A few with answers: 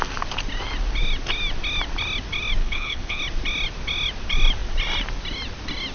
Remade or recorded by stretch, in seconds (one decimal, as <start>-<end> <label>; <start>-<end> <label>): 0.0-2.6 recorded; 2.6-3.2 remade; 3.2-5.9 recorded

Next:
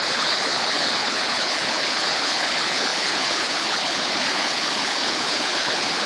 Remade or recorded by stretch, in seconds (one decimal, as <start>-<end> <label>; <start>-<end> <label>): 0.0-6.1 remade

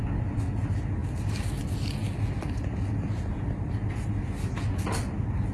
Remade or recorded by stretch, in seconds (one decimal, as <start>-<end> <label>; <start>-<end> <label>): 0.0-5.5 recorded

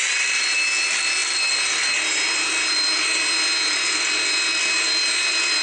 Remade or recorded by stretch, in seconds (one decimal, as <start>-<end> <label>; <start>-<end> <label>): 0.0-5.6 recorded

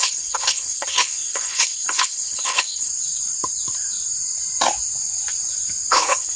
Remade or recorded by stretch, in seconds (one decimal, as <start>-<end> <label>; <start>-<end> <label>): 0.0-2.9 remade; 2.9-5.9 recorded; 5.9-6.4 remade

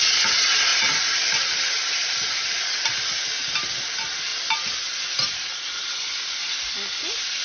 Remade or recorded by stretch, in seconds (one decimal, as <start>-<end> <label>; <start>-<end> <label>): 0.0-7.4 recorded